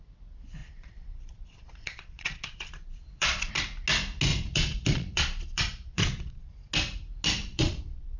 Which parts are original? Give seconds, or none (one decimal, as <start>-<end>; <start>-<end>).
0.0-0.6; 3.5-4.3; 6.5-7.4

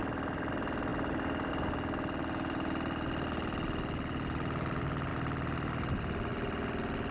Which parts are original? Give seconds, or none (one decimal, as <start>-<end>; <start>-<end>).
0.0-7.1

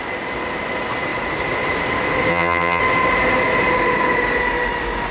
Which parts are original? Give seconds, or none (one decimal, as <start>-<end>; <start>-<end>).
0.0-2.3; 2.8-5.1

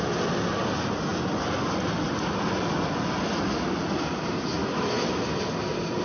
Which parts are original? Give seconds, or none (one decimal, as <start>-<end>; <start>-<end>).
0.0-4.6; 5.2-6.0

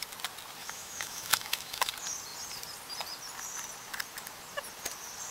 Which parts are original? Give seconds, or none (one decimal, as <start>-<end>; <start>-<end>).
0.0-0.6; 1.9-5.3

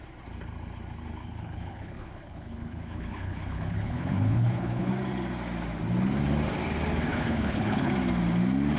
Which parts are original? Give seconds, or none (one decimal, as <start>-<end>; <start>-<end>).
0.0-1.2; 4.9-7.1; 7.9-8.8

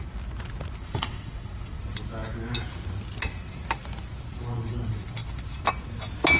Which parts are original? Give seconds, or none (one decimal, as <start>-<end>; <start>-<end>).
0.0-0.8; 1.8-6.4